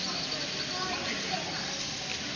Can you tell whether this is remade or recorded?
recorded